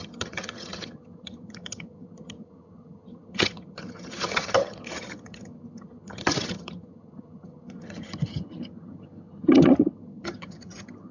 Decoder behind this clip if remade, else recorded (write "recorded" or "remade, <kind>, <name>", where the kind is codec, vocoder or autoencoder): remade, vocoder, HiFi-GAN